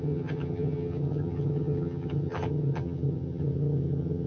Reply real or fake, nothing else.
fake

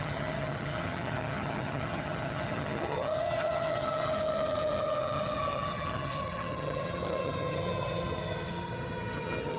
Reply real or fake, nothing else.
fake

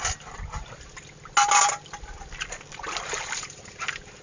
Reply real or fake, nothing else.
real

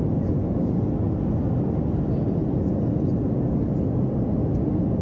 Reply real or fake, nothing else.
real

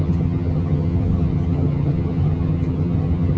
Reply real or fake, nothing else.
fake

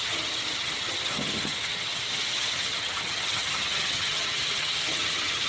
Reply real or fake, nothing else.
fake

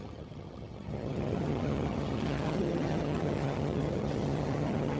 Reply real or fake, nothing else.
fake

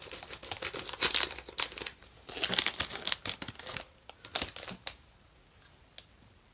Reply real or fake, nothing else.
real